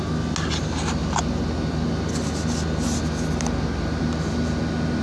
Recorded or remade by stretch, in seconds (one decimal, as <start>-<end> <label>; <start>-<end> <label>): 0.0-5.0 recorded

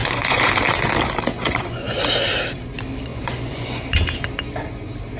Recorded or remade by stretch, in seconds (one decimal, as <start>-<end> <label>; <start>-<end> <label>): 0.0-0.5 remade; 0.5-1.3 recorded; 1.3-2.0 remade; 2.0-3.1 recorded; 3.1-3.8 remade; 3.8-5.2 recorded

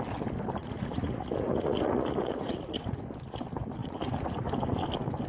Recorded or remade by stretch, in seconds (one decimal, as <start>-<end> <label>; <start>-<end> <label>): 0.0-0.6 recorded; 0.6-3.0 remade; 3.0-3.8 recorded; 3.8-4.5 remade; 4.5-5.3 recorded